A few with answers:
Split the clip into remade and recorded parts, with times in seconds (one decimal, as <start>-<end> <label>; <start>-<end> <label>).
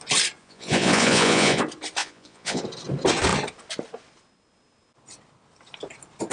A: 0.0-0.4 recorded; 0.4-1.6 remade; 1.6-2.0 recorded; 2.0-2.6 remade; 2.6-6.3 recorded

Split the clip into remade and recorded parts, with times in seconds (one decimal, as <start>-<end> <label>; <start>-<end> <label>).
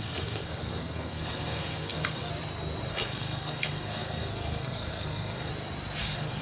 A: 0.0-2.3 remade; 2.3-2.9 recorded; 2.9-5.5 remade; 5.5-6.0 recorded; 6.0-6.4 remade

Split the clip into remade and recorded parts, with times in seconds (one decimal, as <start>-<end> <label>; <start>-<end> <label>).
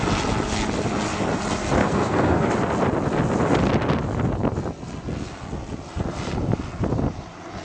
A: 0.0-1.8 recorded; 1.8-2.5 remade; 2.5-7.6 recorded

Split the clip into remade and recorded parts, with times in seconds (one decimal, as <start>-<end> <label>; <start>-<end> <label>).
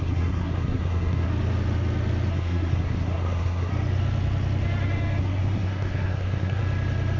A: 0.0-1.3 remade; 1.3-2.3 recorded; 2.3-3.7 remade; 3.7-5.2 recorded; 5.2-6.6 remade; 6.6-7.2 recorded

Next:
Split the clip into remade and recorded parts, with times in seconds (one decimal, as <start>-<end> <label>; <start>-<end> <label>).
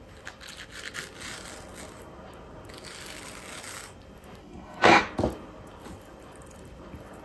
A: 0.0-4.4 recorded; 4.4-5.0 remade; 5.0-7.2 recorded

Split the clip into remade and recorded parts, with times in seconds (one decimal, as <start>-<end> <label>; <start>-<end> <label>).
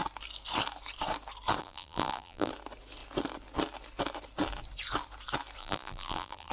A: 0.0-1.6 recorded; 1.6-2.5 remade; 2.5-5.6 recorded; 5.6-6.5 remade